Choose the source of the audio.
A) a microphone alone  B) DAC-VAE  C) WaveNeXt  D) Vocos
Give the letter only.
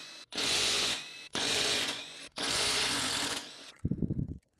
D